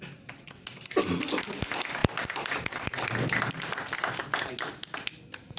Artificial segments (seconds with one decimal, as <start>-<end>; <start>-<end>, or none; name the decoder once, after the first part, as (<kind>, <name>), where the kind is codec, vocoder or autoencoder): 2.0-4.5 (vocoder, BigVGAN v2)